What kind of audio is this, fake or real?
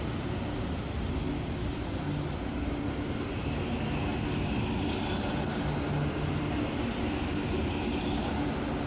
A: real